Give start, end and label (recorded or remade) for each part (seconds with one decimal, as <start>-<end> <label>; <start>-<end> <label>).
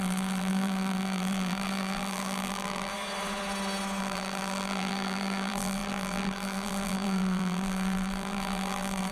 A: 0.0-2.9 remade; 2.9-4.0 recorded; 4.0-9.1 remade